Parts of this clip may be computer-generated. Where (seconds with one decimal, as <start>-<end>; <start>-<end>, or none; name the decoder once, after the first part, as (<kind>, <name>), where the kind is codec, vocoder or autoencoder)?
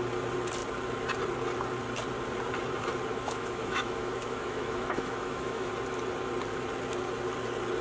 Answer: 3.1-5.7 (autoencoder, DAC-VAE)